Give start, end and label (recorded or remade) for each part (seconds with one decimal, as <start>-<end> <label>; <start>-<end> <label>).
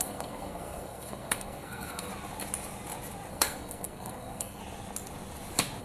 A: 0.0-2.1 remade; 2.1-3.3 recorded; 3.3-4.6 remade; 4.6-5.8 recorded